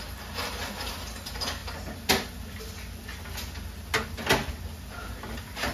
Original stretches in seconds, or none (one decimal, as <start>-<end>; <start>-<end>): 0.0-5.7